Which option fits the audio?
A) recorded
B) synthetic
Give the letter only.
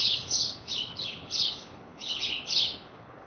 B